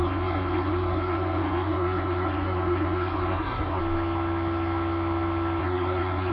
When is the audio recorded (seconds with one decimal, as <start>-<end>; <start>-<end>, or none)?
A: 3.8-5.6